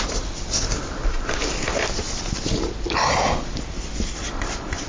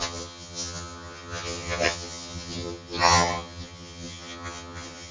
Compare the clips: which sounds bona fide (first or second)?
first